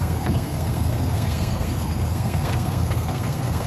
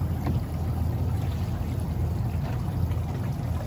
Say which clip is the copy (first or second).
first